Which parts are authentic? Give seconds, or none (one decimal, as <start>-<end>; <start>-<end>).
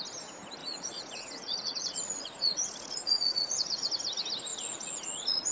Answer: 0.0-0.6; 3.9-4.5